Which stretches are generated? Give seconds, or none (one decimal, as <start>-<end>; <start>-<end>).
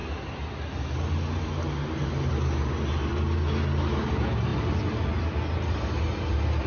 none